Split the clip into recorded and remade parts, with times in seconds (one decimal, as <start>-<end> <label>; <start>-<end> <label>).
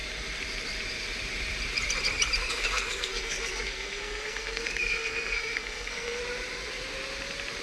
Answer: 0.0-2.4 recorded; 2.4-6.2 remade; 6.2-7.6 recorded